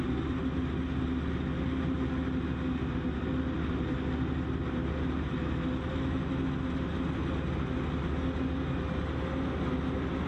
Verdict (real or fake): real